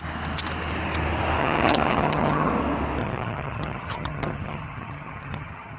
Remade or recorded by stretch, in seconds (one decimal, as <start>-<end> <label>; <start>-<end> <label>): 0.0-1.4 recorded; 1.4-2.5 remade; 2.5-3.0 recorded; 3.0-5.8 remade